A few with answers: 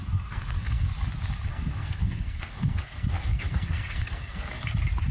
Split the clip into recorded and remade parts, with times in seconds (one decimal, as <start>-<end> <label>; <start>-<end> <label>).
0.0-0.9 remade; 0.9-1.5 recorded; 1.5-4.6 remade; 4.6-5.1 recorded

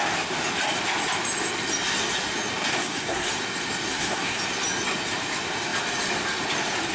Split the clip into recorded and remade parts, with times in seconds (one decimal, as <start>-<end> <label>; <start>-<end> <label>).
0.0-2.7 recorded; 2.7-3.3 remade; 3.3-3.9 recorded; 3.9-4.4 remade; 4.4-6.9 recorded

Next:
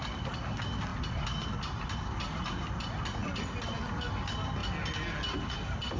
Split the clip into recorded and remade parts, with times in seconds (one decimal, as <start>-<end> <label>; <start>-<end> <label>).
0.0-6.0 recorded

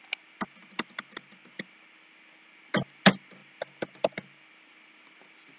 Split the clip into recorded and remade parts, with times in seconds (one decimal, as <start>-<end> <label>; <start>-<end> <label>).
0.0-5.6 recorded